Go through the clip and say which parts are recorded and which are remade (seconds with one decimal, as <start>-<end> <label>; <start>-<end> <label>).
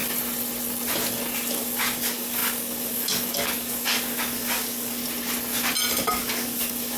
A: 0.0-1.5 recorded; 1.5-5.0 remade; 5.0-6.1 recorded; 6.1-7.0 remade